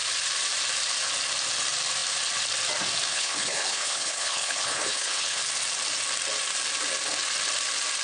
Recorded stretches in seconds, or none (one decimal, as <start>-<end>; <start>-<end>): 0.0-3.1; 5.4-8.0